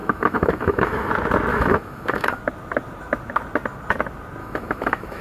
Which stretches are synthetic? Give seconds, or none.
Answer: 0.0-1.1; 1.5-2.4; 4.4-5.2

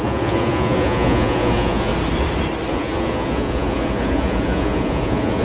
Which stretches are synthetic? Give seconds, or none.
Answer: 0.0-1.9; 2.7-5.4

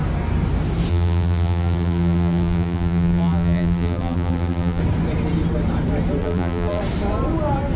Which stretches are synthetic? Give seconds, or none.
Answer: 0.9-4.8; 6.2-6.8